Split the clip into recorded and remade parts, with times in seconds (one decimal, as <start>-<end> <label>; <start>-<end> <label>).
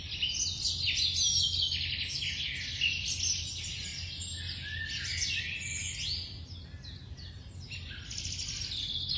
0.0-9.2 recorded